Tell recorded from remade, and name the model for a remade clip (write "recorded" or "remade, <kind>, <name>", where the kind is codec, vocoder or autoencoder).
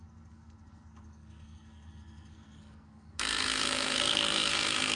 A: remade, codec, SNAC